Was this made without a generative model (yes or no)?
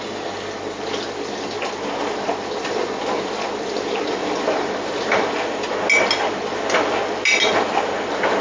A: yes